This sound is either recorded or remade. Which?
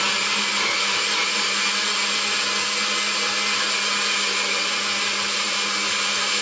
recorded